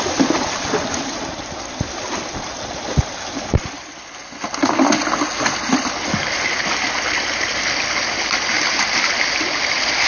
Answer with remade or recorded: recorded